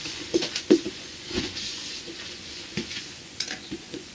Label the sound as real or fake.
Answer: fake